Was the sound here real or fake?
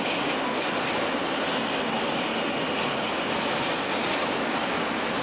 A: real